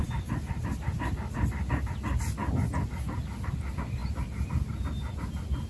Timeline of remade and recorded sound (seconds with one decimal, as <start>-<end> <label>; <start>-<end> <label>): 0.0-0.6 remade; 0.6-5.7 recorded